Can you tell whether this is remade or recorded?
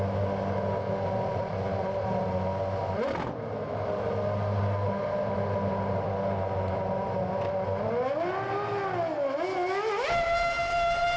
recorded